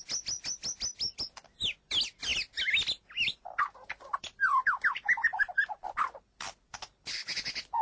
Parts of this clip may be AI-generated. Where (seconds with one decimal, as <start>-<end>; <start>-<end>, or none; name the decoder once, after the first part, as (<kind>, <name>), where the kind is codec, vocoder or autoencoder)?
5.3-6.0 (vocoder, BigVGAN v2)